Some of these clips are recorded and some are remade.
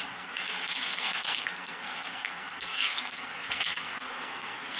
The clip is remade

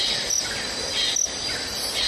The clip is recorded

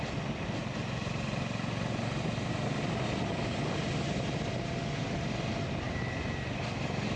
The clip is recorded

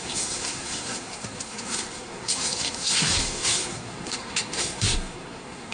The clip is remade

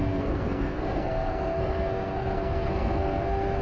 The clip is remade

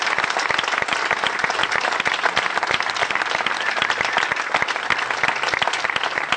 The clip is recorded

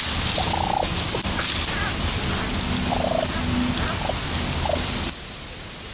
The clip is recorded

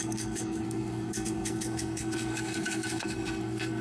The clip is remade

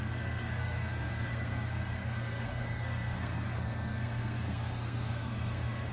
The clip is remade